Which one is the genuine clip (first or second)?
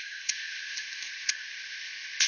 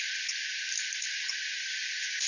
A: second